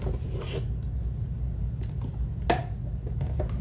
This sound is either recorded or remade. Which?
recorded